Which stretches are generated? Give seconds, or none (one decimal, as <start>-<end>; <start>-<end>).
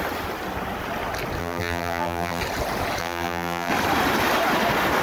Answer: 1.4-2.4; 3.0-3.7